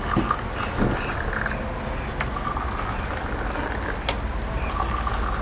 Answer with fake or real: real